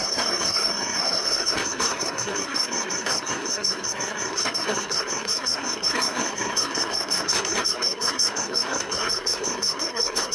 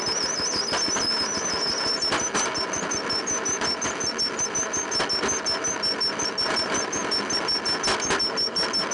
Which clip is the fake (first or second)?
first